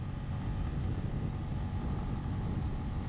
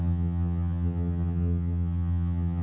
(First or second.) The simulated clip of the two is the second